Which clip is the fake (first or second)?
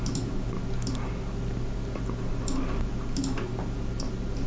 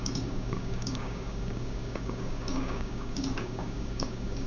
second